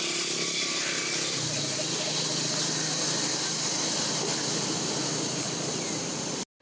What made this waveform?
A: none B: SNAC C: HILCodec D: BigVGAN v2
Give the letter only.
A